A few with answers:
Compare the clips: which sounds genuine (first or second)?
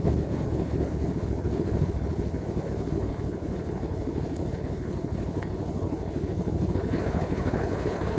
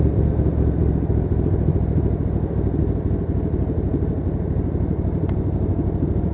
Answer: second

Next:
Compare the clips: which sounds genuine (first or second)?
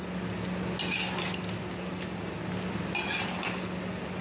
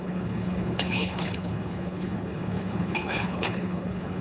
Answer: first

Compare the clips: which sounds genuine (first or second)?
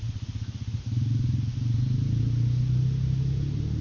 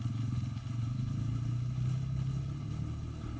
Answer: first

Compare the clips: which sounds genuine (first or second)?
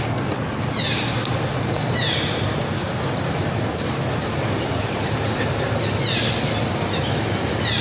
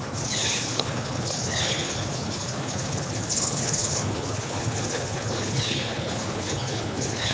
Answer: first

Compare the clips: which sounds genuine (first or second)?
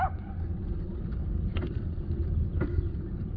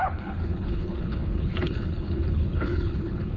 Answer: first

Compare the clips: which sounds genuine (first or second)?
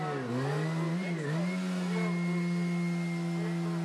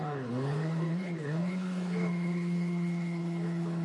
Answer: first